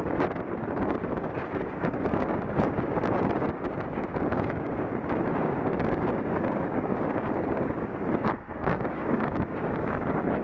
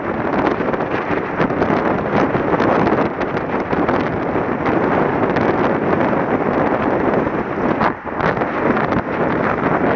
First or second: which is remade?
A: first